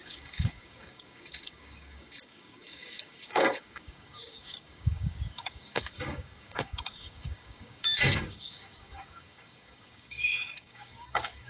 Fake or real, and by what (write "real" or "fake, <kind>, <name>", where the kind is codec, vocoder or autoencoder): fake, codec, DAC